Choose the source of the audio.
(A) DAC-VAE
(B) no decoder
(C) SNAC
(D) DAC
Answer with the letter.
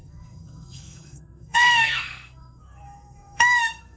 C